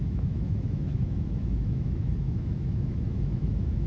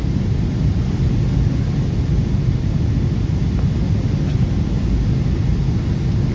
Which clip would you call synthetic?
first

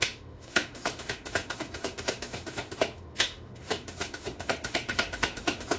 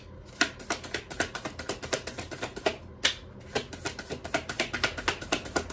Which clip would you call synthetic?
first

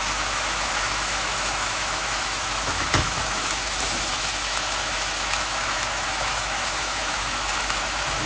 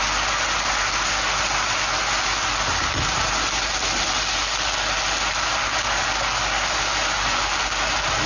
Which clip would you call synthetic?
first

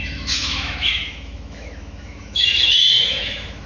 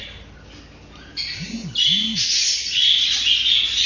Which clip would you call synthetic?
first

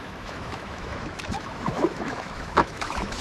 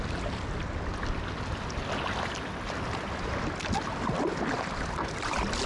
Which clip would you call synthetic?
first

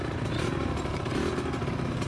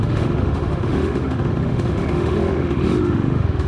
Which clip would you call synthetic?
second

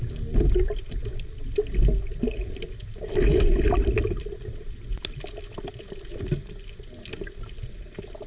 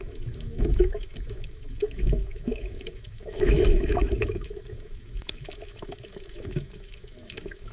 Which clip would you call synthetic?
second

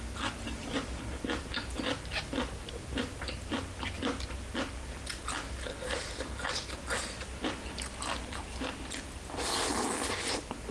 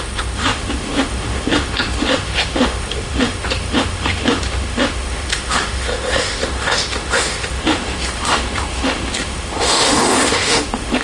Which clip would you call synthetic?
second